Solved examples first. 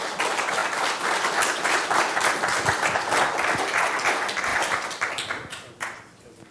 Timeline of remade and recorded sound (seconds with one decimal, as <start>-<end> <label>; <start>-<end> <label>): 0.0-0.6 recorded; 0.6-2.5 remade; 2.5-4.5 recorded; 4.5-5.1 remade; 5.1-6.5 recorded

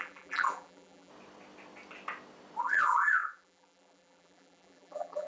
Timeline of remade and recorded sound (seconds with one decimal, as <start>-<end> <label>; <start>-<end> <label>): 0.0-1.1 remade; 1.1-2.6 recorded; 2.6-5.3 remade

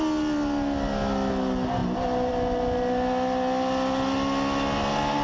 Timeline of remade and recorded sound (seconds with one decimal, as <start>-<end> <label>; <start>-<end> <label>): 0.0-5.2 recorded

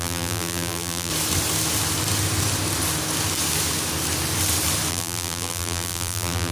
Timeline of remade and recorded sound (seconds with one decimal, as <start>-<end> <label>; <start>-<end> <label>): 0.0-1.1 remade; 1.1-4.9 recorded; 4.9-6.5 remade

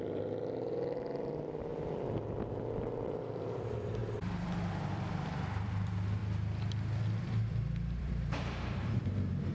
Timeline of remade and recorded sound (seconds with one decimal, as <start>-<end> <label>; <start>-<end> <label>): 0.0-1.7 remade; 1.7-2.5 recorded; 2.5-4.0 remade; 4.0-4.8 recorded; 4.8-6.2 remade; 6.2-7.0 recorded; 7.0-9.5 remade